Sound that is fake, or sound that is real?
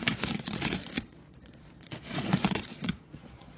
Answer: fake